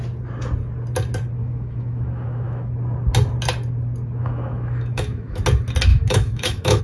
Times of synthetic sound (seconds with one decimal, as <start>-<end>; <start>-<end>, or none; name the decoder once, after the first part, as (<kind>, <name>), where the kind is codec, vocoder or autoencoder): 1.4-2.7 (autoencoder, DAC-VAE); 4.2-5.4; 5.9-6.8